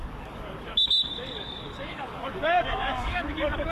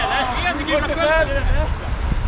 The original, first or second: second